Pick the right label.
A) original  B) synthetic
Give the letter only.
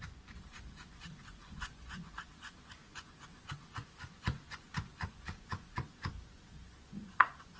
B